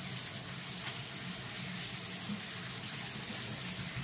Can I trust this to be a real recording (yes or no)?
yes